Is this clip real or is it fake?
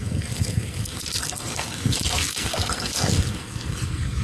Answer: fake